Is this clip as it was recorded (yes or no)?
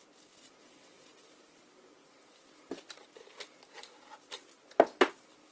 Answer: yes